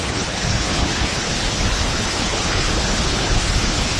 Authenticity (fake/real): fake